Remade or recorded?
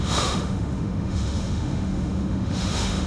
remade